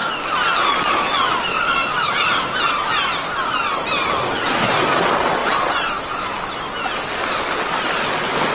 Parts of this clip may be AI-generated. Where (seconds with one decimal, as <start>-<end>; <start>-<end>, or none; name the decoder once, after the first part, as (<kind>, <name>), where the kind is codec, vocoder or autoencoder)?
1.5-2.1 (codec, DAC)